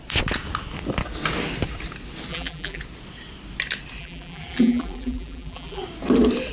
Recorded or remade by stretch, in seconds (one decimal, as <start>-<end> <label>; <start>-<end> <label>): 0.0-2.3 recorded; 2.3-2.8 remade; 2.8-4.0 recorded; 4.0-5.8 remade; 5.8-6.5 recorded